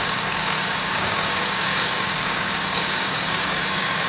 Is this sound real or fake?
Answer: fake